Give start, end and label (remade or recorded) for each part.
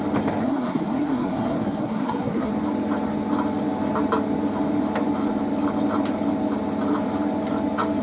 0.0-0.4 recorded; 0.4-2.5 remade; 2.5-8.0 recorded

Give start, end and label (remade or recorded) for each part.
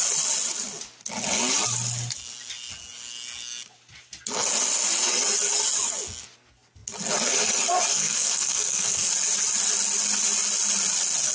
0.0-7.9 recorded; 7.9-9.1 remade; 9.1-11.3 recorded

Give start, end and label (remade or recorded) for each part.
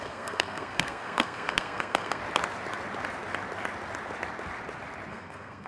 0.0-2.2 remade; 2.2-5.1 recorded; 5.1-5.7 remade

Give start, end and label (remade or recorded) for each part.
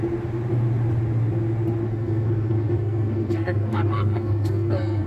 0.0-1.9 recorded; 1.9-5.1 remade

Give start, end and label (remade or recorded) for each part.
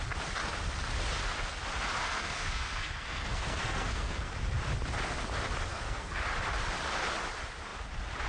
0.0-2.0 recorded; 2.0-4.3 remade; 4.3-5.7 recorded; 5.7-6.2 remade; 6.2-8.3 recorded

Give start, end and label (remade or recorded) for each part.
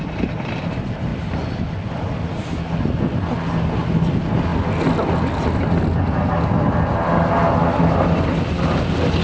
0.0-9.2 recorded